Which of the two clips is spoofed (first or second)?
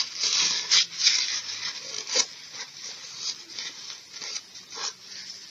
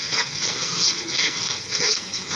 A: second